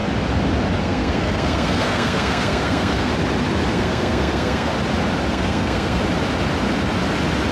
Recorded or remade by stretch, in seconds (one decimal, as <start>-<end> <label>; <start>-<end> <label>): 0.0-0.8 recorded; 0.8-3.1 remade; 3.1-3.7 recorded; 3.7-4.7 remade; 4.7-5.3 recorded; 5.3-6.0 remade; 6.0-7.5 recorded